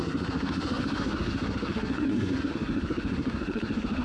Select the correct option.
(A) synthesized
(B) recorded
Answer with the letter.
A